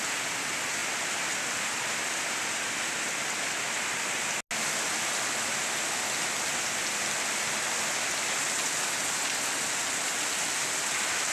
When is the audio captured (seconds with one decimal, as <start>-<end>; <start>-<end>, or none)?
0.0-11.3

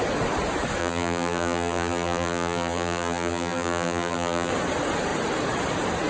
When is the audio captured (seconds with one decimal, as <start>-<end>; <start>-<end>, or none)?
0.0-0.8; 4.5-6.1